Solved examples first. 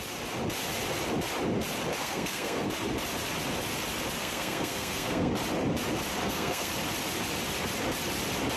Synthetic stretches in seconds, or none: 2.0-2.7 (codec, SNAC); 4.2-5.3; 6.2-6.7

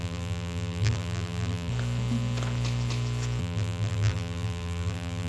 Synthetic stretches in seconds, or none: 0.0-1.7 (vocoder, BigVGAN v2); 3.4-5.3